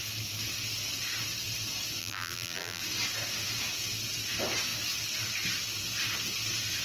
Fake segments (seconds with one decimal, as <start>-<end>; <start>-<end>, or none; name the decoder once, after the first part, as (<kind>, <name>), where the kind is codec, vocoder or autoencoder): 2.0-2.8 (vocoder, BigVGAN v2)